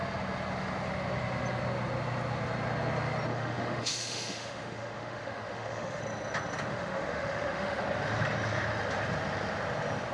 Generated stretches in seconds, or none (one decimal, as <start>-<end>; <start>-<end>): 3.3-6.0; 6.7-7.8